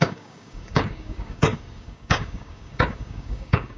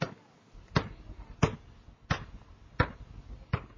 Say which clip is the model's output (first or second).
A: first